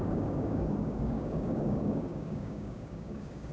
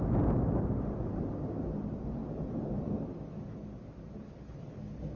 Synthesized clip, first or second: first